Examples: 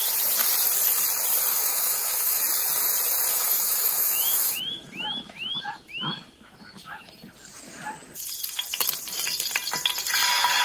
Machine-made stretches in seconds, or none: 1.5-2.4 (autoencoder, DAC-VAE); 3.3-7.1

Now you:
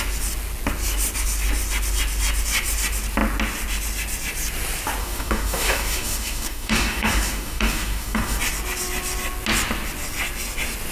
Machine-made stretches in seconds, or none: 5.0-8.4 (codec, DAC)

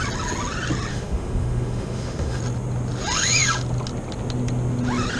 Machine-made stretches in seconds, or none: 0.9-2.4 (autoencoder, DAC-VAE)

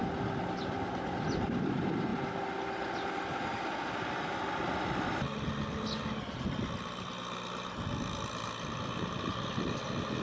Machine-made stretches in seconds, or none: none

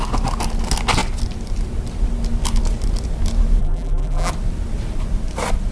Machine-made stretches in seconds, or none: 3.6-4.3 (vocoder, BigVGAN v2)

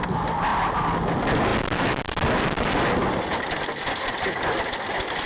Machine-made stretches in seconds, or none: none

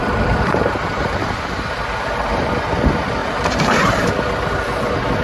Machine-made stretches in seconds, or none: 0.0-2.5 (vocoder, BigVGAN v2); 3.2-4.1